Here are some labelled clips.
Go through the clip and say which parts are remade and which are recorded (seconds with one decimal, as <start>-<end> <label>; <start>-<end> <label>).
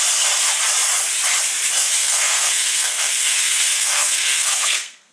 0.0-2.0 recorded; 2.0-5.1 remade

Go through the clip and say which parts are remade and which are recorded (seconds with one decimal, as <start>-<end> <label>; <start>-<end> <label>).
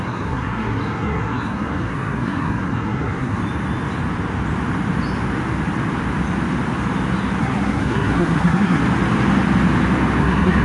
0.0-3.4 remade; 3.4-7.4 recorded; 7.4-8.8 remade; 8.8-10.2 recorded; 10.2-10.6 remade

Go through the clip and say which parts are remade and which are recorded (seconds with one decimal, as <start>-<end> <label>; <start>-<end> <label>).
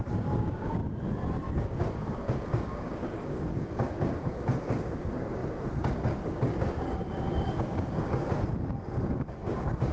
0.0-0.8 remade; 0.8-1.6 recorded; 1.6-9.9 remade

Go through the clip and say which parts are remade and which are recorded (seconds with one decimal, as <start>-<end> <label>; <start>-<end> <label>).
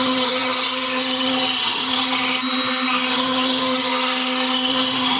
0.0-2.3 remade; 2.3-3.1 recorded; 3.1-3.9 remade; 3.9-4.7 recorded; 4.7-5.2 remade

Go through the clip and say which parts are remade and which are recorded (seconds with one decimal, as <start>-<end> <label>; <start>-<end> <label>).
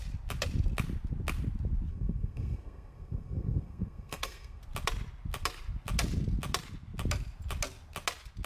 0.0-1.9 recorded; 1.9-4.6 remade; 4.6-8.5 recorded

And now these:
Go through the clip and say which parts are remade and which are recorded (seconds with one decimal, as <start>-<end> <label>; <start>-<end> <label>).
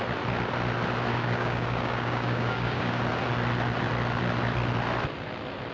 0.0-1.1 recorded; 1.1-3.0 remade; 3.0-5.7 recorded